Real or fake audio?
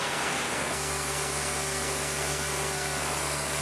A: fake